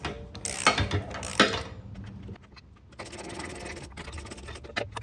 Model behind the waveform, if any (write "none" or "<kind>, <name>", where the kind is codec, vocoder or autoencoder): none